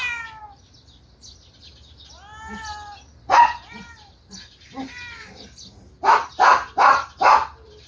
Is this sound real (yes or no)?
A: yes